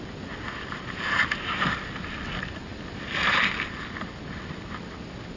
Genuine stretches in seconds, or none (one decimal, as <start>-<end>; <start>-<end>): 0.0-5.4